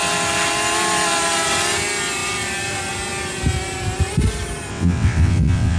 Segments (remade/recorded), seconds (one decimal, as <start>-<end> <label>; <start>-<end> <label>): 0.0-4.7 recorded; 4.7-5.8 remade